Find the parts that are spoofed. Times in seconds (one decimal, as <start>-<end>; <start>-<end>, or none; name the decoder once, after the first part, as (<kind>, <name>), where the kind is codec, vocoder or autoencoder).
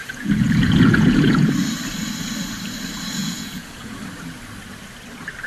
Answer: 0.0-1.5 (vocoder, Vocos); 3.2-4.0